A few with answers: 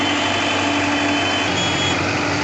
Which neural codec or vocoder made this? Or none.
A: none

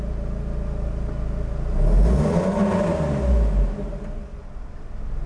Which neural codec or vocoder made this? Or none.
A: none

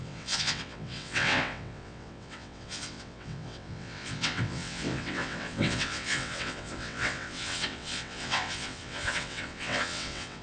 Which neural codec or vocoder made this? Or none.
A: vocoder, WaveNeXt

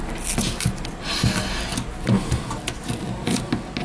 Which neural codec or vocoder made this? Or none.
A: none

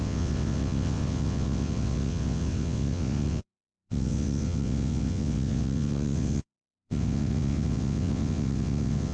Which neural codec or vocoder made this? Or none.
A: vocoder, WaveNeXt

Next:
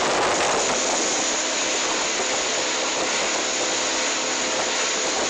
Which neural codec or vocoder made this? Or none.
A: none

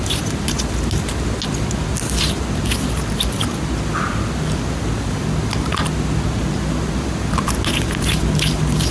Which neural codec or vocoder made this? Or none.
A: none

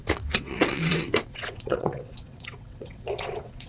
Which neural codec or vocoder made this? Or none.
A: vocoder, WaveNeXt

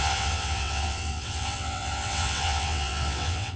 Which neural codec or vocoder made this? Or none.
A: vocoder, WaveNeXt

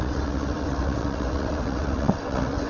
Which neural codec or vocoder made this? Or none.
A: vocoder, WaveNeXt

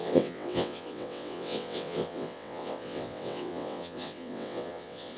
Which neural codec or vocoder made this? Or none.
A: vocoder, WaveNeXt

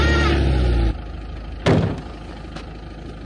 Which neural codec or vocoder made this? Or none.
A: none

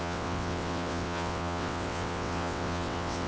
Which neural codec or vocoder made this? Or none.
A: vocoder, WaveNeXt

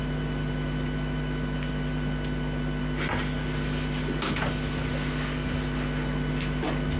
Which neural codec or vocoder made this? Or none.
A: none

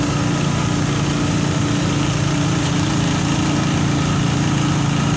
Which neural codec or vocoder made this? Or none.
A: none